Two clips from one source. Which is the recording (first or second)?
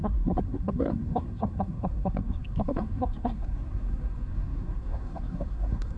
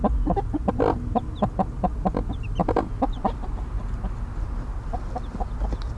second